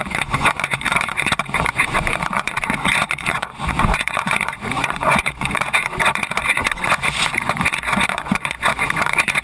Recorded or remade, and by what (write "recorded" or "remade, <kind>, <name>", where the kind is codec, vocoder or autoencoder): remade, vocoder, Vocos